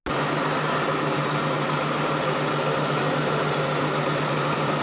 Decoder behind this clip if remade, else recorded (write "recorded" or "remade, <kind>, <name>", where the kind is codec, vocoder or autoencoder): recorded